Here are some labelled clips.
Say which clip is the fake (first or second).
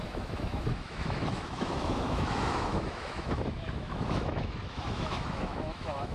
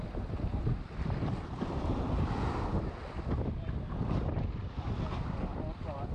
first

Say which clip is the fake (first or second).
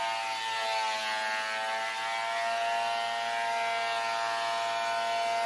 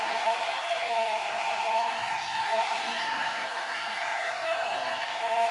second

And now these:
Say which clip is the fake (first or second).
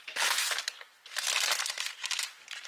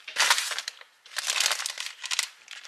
second